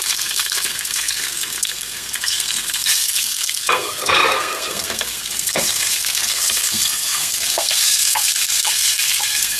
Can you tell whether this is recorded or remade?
remade